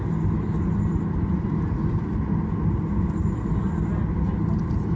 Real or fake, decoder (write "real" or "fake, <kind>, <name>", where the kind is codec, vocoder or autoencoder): real